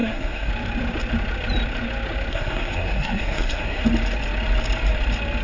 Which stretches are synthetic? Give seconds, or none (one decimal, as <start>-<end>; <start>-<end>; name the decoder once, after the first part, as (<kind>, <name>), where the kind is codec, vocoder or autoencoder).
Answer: 0.0-0.5 (codec, SNAC); 2.3-3.8